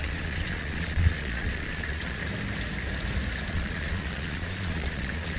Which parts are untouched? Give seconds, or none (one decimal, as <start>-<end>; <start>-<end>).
2.2-3.5